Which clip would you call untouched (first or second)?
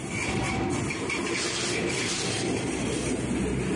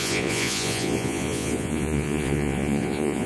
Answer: first